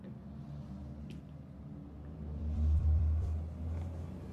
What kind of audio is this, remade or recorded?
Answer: remade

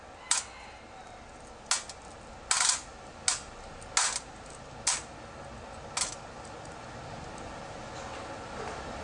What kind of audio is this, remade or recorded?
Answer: recorded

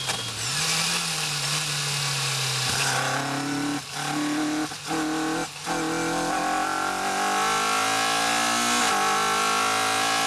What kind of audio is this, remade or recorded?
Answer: recorded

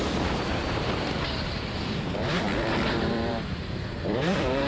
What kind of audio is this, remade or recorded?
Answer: remade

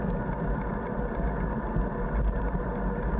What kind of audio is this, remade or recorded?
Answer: recorded